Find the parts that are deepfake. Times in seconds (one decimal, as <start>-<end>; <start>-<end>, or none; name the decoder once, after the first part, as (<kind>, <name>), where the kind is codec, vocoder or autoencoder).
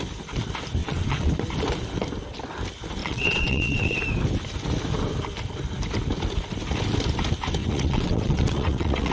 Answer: 0.8-1.3 (vocoder, WaveNeXt); 3.0-4.0; 7.6-9.1